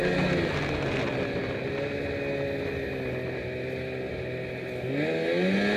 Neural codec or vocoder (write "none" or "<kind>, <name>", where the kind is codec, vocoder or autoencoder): none